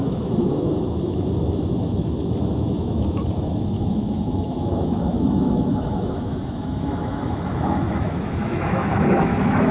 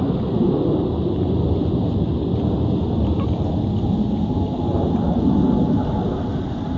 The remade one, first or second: first